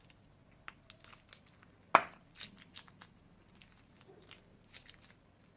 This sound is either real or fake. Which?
real